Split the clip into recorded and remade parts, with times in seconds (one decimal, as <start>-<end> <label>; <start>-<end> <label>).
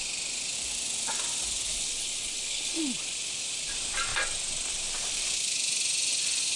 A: 0.0-1.7 recorded; 1.7-2.8 remade; 2.8-6.6 recorded